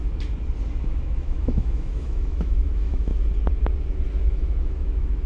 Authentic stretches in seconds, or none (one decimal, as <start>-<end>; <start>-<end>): 0.0-0.8; 3.1-4.2